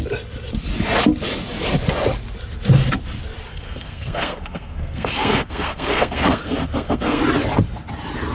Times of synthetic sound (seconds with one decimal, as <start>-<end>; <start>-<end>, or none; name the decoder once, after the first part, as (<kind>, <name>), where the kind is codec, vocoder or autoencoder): 3.5-7.2 (codec, SNAC)